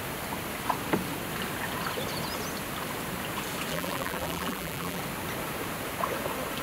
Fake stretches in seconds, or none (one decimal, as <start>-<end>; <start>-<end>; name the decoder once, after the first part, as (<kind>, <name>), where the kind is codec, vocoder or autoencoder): 3.7-5.0 (vocoder, BigVGAN v2)